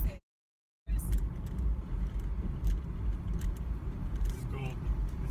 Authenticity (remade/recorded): remade